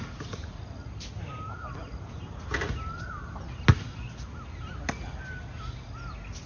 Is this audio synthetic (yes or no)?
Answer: no